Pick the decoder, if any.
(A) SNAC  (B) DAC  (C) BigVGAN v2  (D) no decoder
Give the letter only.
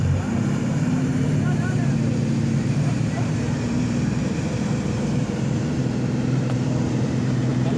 C